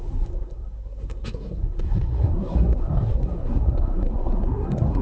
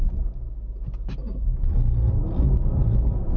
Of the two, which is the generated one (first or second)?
first